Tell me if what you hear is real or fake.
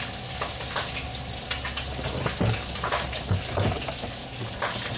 real